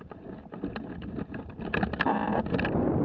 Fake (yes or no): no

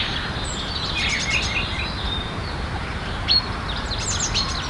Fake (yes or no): no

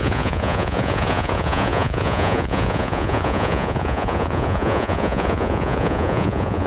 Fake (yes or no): yes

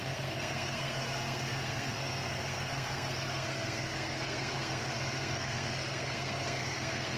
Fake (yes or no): yes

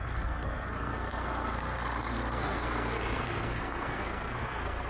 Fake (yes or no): yes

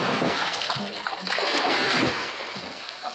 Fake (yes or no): yes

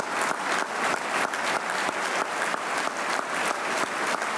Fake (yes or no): no